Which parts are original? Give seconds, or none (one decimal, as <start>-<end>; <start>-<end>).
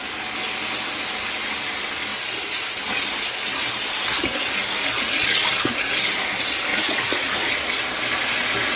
0.0-6.7; 7.5-8.8